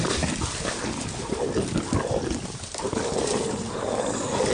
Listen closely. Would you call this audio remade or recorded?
recorded